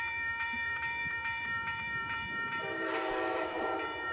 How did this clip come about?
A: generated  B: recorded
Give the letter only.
A